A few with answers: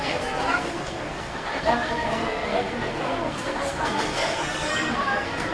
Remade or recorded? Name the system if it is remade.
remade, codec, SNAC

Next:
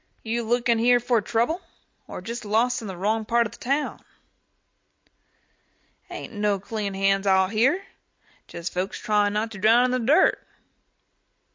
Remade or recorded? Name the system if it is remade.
recorded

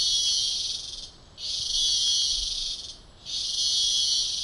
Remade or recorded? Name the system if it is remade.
recorded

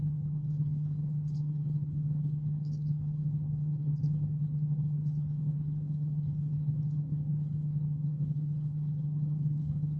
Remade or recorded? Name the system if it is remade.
remade, codec, HILCodec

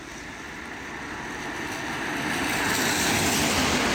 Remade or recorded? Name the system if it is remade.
recorded